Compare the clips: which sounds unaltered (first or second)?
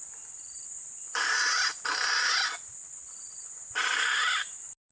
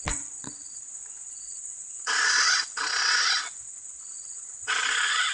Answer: first